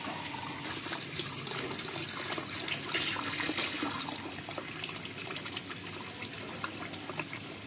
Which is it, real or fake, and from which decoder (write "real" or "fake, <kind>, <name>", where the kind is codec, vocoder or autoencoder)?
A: real